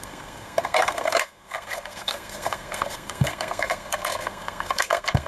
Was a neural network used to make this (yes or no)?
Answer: yes